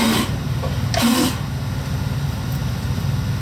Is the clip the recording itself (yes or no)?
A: yes